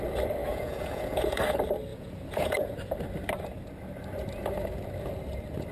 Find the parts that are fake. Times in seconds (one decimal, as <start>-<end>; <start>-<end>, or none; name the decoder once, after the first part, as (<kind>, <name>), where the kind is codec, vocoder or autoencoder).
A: 0.4-1.4 (vocoder, Vocos); 1.9-2.7